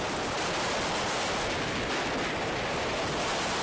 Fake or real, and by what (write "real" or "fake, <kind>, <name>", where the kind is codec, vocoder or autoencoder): real